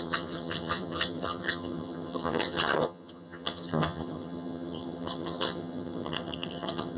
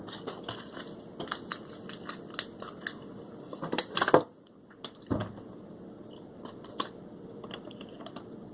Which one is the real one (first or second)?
second